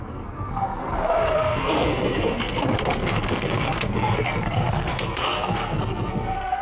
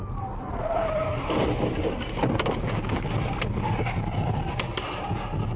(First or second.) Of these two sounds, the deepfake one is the first